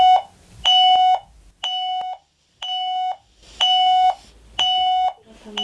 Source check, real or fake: real